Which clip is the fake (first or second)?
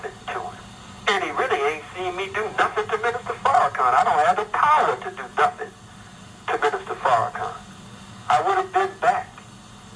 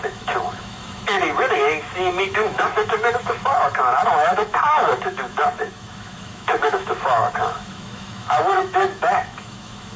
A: second